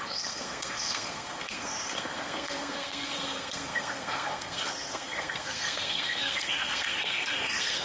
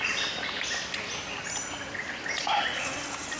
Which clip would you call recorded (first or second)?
second